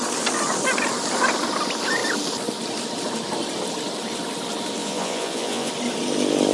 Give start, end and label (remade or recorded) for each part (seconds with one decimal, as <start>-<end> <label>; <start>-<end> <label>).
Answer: 0.0-4.8 recorded; 4.8-5.7 remade; 5.7-6.5 recorded